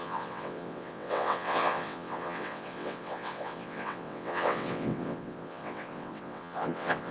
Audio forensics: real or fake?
fake